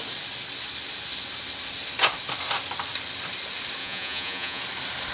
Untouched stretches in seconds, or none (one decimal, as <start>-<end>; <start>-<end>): 0.0-3.8; 4.6-5.1